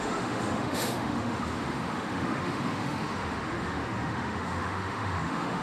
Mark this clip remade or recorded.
remade